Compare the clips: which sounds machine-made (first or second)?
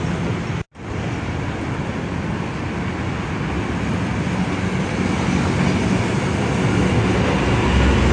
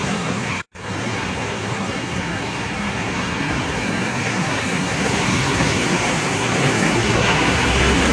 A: second